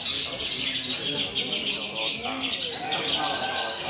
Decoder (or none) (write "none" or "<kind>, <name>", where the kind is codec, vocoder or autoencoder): none